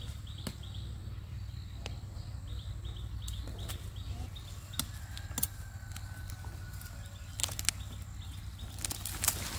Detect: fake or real real